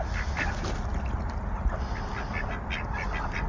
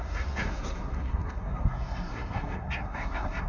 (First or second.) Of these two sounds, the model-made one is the second